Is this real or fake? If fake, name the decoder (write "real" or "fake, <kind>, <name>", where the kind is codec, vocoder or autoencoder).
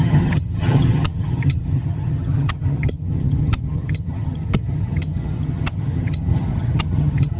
fake, vocoder, HiFi-GAN